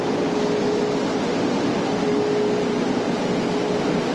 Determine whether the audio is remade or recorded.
recorded